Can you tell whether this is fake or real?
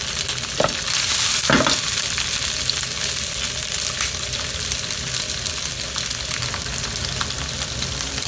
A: real